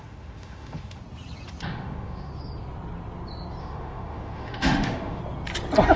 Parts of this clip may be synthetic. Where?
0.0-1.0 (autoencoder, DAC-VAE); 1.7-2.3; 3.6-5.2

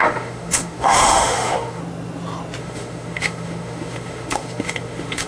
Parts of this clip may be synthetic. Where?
0.0-1.8 (autoencoder, DAC-VAE); 2.6-5.3

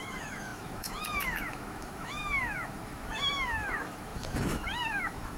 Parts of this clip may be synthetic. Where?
0.0-5.4 (autoencoder, DAC-VAE)